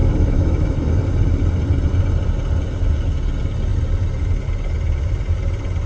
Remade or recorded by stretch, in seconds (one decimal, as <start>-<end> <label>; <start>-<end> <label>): 0.0-1.0 remade; 1.0-5.9 recorded